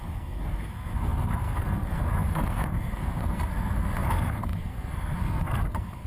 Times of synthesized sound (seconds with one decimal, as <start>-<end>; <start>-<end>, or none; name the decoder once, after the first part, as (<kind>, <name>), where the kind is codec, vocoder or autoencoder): 0.0-6.1 (codec, SNAC)